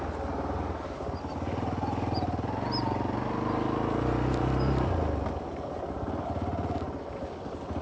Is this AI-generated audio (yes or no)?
no